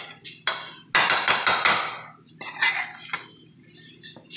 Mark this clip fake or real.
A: real